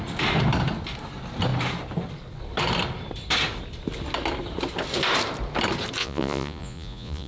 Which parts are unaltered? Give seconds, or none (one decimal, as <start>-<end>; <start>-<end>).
0.0-6.0